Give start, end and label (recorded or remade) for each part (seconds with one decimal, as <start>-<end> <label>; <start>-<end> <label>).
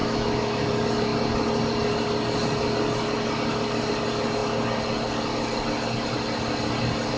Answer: 0.0-0.7 remade; 0.7-7.2 recorded